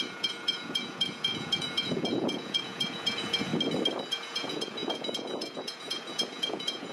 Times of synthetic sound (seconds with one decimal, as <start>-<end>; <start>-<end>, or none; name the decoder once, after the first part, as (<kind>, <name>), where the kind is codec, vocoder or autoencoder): 0.0-3.5 (vocoder, Vocos); 4.1-6.9